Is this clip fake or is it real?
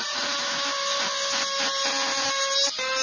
real